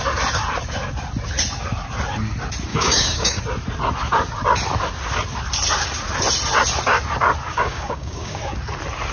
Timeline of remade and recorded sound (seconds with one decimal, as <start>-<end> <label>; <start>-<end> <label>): 0.0-2.7 recorded; 2.7-3.4 remade; 3.4-7.5 recorded; 7.5-8.4 remade; 8.4-9.1 recorded